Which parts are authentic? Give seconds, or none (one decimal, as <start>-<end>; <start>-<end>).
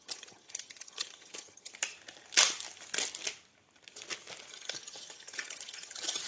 1.7-4.5